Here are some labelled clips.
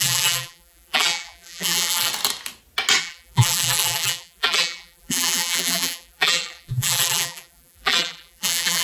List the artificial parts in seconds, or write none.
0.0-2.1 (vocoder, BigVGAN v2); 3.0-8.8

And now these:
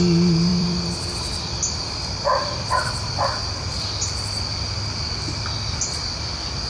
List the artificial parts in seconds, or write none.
0.5-1.1 (vocoder, BigVGAN v2)

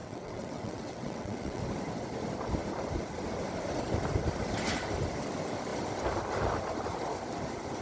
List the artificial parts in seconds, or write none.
0.0-1.6 (vocoder, WaveNeXt)

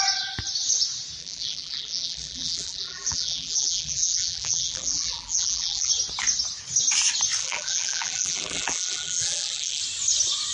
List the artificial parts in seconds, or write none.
1.2-5.9 (vocoder, BigVGAN v2); 7.4-9.8

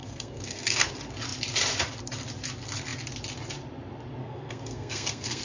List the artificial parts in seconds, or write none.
0.0-0.9 (codec, SNAC); 4.2-5.4